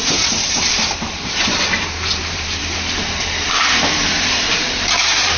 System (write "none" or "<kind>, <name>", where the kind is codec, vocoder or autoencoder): vocoder, BigVGAN v2